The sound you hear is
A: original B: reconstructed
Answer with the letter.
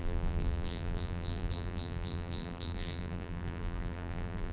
B